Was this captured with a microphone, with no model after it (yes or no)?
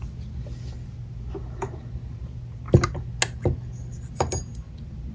yes